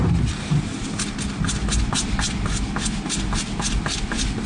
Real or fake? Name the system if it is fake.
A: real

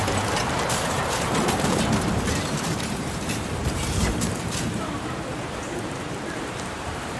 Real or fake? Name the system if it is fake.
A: fake, vocoder, BigVGAN v2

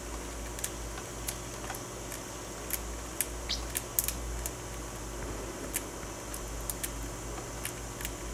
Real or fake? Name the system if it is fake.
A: real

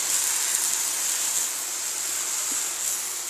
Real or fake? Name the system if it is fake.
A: real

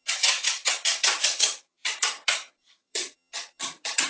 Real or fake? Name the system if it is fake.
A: fake, vocoder, HiFi-GAN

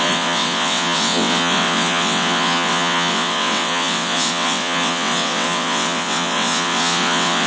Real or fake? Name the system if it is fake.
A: fake, vocoder, WaveNeXt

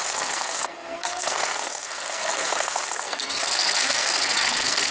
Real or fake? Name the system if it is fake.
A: fake, codec, SNAC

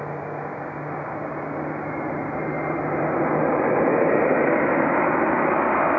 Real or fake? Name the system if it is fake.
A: real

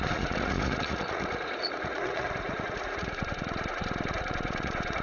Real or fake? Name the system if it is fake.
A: fake, vocoder, Vocos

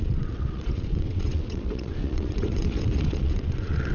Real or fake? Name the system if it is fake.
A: fake, vocoder, WaveNeXt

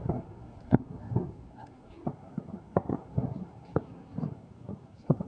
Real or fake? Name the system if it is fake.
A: fake, codec, SNAC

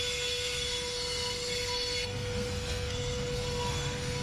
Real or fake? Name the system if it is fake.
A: fake, codec, SNAC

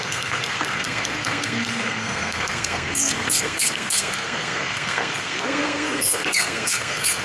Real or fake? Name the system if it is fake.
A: fake, codec, SNAC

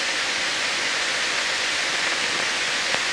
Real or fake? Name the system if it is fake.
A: fake, vocoder, Vocos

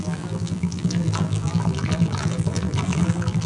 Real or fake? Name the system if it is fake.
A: fake, vocoder, BigVGAN v2